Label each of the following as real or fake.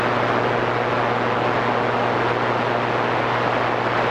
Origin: real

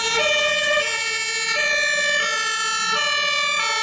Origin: real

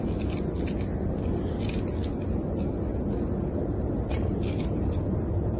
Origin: real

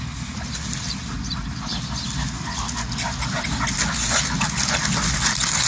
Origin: real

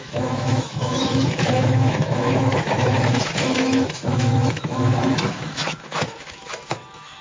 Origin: fake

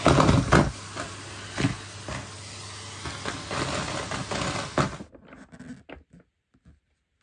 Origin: real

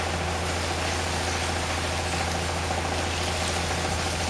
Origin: real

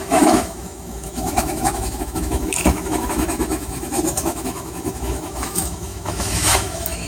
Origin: fake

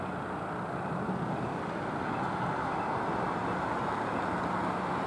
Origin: real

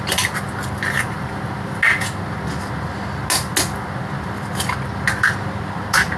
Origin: real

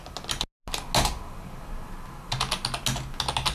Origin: real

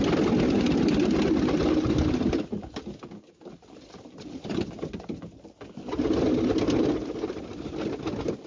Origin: real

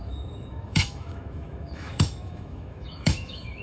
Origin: fake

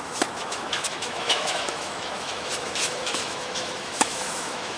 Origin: fake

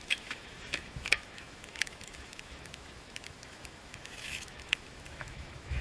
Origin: fake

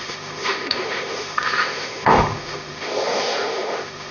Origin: fake